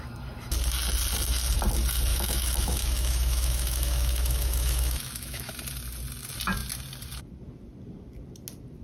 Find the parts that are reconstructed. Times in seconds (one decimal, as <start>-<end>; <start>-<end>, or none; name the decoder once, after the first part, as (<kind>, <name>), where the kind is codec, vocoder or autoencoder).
2.1-5.5 (autoencoder, DAC-VAE)